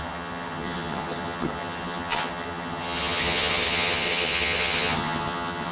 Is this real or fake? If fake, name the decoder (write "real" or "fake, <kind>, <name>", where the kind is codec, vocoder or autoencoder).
fake, vocoder, HiFi-GAN